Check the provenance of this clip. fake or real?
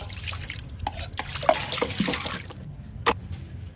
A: real